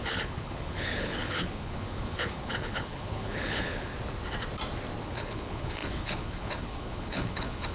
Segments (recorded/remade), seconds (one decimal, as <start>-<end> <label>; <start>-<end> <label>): 0.0-3.9 remade; 3.9-5.0 recorded; 5.0-7.7 remade